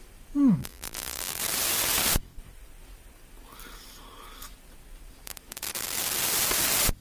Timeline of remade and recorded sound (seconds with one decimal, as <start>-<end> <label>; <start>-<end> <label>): 0.0-0.6 recorded; 0.6-1.4 remade; 1.4-7.0 recorded